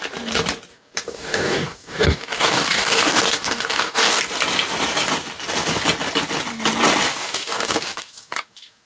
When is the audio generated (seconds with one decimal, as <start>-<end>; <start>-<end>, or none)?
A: 0.7-4.2; 7.1-8.9

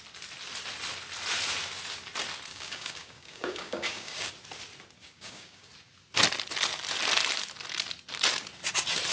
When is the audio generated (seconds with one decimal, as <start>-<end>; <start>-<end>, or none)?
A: 2.5-4.3; 5.0-5.7

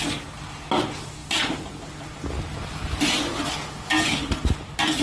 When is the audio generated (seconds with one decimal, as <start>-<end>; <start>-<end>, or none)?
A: none

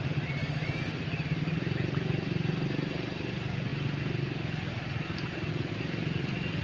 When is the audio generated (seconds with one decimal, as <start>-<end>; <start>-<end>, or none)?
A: none

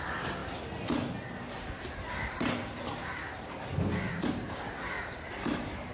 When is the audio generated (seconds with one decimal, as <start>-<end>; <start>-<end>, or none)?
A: none

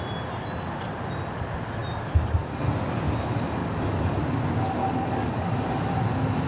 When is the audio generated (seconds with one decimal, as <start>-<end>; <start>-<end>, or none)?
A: 3.6-4.2; 4.8-5.9